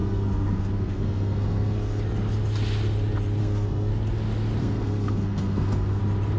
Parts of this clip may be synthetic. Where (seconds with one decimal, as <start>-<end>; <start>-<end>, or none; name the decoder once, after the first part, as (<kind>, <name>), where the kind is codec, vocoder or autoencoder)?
0.0-2.0 (codec, SNAC); 3.4-3.9; 4.6-6.0